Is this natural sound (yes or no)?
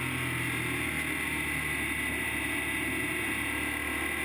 yes